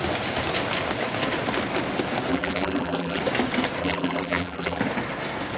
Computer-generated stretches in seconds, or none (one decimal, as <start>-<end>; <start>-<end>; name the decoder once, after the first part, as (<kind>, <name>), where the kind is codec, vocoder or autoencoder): 2.3-3.2 (vocoder, BigVGAN v2); 3.8-4.8